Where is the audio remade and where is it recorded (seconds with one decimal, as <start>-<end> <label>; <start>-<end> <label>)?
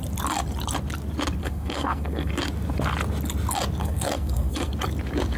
0.0-1.4 recorded; 1.4-2.3 remade; 2.3-3.8 recorded; 3.8-4.7 remade; 4.7-5.4 recorded